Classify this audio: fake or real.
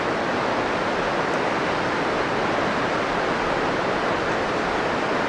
real